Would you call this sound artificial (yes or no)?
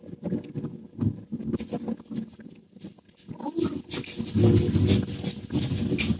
no